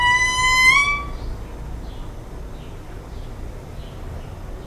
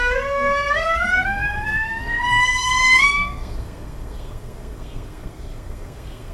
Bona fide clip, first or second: first